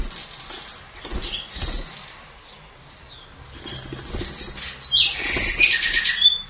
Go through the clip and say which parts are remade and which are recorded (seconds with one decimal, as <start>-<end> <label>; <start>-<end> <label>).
0.0-6.5 recorded